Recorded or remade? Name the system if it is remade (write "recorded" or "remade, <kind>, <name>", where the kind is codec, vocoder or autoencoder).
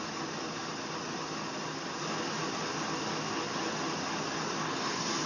recorded